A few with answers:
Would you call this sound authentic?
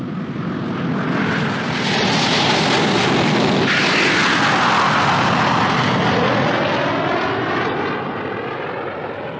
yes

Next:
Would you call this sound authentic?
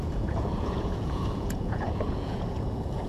no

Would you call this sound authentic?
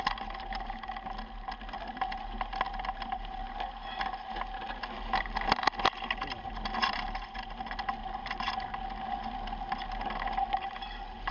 yes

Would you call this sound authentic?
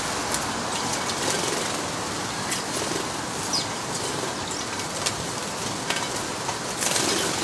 yes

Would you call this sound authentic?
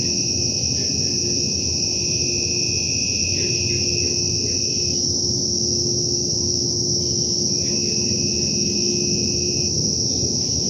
yes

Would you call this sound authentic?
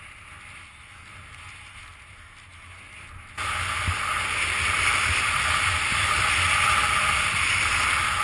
yes